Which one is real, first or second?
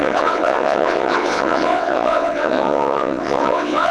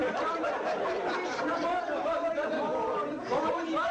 second